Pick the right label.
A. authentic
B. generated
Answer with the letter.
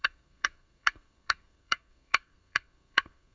B